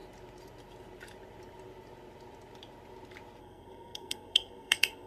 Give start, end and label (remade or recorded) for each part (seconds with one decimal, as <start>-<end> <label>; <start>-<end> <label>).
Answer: 0.0-3.4 recorded; 3.4-5.1 remade